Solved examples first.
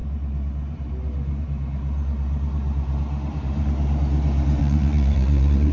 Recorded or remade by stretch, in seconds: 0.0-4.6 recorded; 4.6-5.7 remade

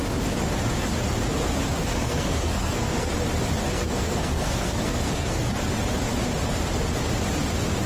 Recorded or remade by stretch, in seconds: 0.0-1.8 recorded; 1.8-3.1 remade; 3.1-3.7 recorded; 3.7-5.6 remade; 5.6-7.9 recorded

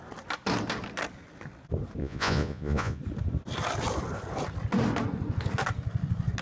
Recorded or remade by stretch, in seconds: 0.0-2.0 recorded; 2.0-3.0 remade; 3.0-6.4 recorded

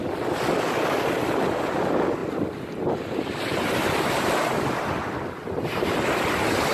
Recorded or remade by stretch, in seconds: 0.0-6.7 recorded

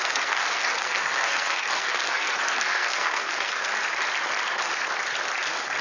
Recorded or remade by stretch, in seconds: 0.0-3.7 remade; 3.7-5.8 recorded

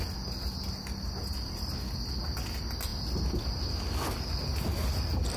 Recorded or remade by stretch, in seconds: 0.0-5.4 recorded

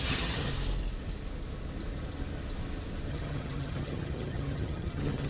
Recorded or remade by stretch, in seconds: 0.0-0.5 remade; 0.5-3.1 recorded; 3.1-5.3 remade